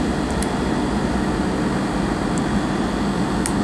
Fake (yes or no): no